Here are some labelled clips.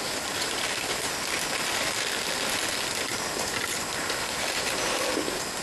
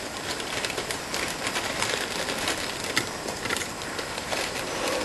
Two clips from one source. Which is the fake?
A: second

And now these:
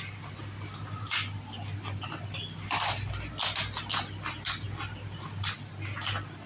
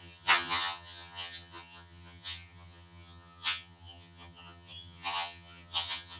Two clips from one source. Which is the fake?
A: second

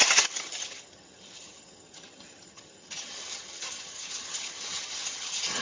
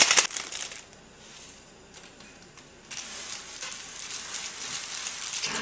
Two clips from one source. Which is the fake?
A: first